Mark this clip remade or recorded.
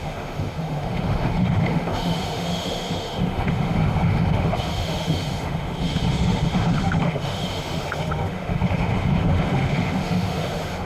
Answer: remade